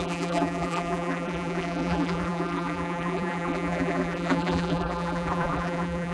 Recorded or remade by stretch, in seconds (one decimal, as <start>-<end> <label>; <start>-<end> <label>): 0.0-6.1 remade